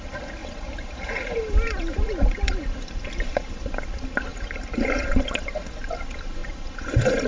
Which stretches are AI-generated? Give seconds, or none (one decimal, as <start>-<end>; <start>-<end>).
0.4-3.7; 4.3-5.3; 6.4-7.3